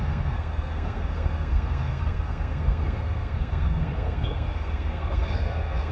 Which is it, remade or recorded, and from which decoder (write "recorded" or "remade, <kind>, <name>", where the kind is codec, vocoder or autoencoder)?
remade, codec, SNAC